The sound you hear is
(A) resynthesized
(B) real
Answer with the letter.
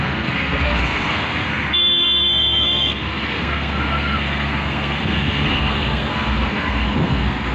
A